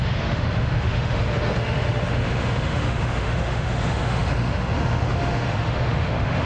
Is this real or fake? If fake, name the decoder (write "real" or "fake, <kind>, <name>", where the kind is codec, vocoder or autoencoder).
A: fake, autoencoder, DAC-VAE